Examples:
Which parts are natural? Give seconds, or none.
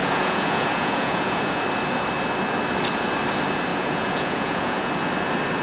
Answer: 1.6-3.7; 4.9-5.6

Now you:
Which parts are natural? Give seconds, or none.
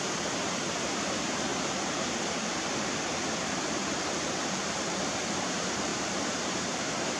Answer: 3.1-3.7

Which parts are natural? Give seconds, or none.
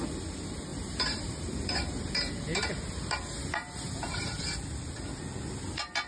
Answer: 0.0-0.7; 4.4-6.1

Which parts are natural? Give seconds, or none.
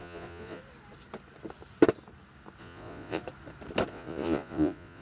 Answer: 0.6-2.6; 3.2-3.9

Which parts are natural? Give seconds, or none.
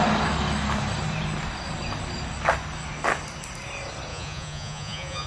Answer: 0.0-4.1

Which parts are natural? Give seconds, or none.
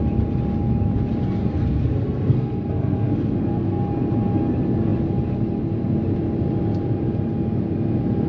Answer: 0.0-1.4; 3.8-8.3